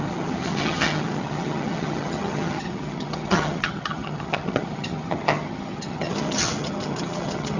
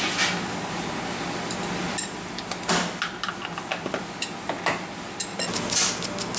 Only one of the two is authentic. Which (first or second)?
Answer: second